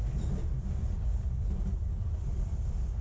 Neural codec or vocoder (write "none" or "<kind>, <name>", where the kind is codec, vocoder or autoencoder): none